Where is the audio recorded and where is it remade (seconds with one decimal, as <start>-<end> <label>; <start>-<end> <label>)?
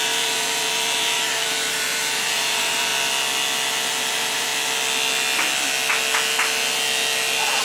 0.0-2.9 remade; 2.9-4.1 recorded; 4.1-4.5 remade; 4.5-7.6 recorded